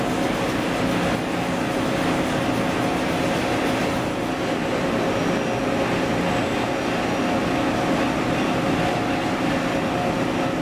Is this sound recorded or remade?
recorded